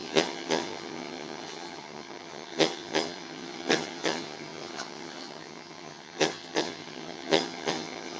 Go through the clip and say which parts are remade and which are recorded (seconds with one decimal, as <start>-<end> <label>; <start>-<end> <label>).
0.0-8.2 remade